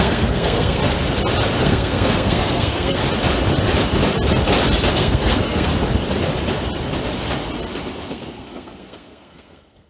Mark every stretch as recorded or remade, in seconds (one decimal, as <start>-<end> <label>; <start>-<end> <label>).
0.0-0.8 remade; 0.8-1.6 recorded; 1.6-3.0 remade; 3.0-4.9 recorded; 4.9-5.7 remade; 5.7-8.1 recorded; 8.1-9.9 remade